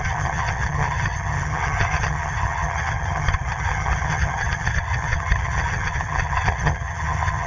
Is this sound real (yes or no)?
no